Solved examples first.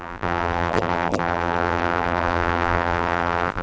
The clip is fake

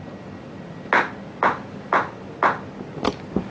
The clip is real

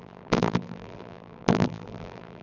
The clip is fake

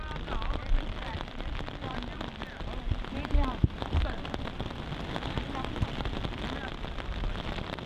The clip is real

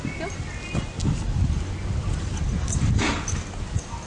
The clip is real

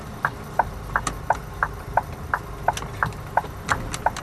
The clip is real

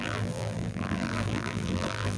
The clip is fake